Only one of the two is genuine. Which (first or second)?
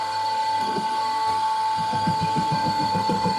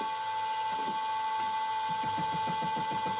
second